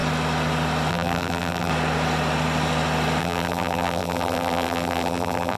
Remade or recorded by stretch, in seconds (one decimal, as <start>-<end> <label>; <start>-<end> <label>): 0.0-0.9 recorded; 0.9-1.7 remade; 1.7-3.2 recorded; 3.2-5.6 remade